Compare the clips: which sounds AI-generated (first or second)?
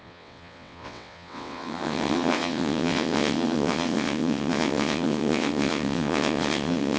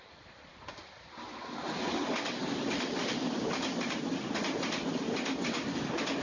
first